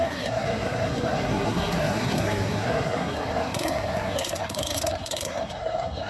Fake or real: fake